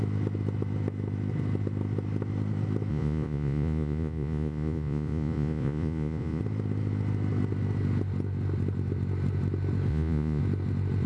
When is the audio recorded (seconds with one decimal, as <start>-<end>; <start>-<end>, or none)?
0.0-2.9; 6.4-9.9; 10.4-11.1